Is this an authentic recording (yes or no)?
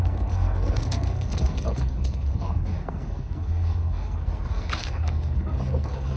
no